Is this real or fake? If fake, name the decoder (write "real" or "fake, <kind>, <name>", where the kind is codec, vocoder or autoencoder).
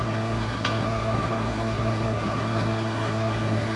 fake, codec, SNAC